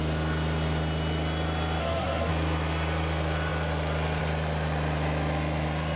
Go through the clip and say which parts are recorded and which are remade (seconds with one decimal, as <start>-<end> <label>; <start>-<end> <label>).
0.0-1.8 recorded; 1.8-2.3 remade; 2.3-6.0 recorded